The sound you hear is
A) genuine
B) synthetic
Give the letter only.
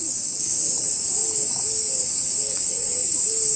B